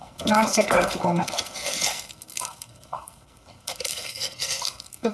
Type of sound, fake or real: fake